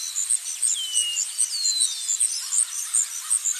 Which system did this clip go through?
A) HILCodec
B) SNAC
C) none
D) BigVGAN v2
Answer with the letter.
C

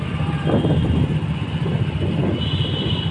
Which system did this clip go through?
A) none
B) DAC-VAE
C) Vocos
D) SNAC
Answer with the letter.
A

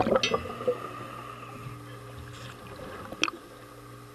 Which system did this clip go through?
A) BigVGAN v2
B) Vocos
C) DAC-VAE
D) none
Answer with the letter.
D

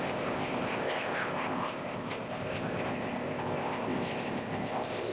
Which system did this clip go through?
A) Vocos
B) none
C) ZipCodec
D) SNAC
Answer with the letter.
C